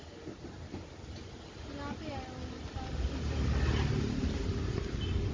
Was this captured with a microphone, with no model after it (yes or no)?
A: yes